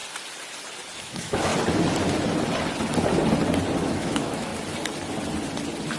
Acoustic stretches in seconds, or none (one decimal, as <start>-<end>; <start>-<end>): 0.0-1.0; 1.5-3.8; 4.5-6.0